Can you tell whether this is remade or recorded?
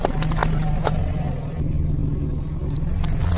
recorded